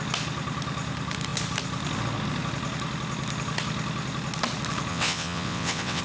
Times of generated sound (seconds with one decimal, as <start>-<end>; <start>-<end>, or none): 4.9-6.0